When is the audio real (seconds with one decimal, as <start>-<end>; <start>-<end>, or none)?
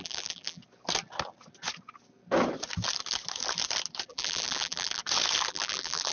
0.6-4.1; 5.0-5.5